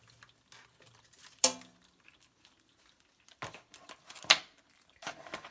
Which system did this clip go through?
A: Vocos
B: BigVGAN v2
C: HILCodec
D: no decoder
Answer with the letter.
D